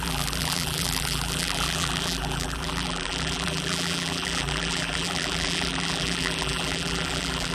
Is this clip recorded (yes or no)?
no